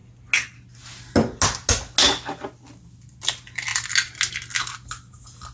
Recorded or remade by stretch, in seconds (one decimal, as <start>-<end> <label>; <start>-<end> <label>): 0.0-5.5 recorded